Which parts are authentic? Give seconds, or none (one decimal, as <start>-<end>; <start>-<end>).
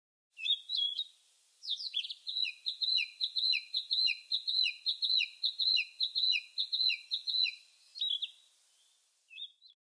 7.9-8.8